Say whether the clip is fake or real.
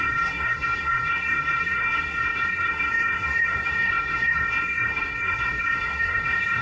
fake